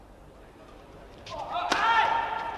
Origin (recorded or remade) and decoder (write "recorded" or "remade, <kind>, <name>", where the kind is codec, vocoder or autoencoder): recorded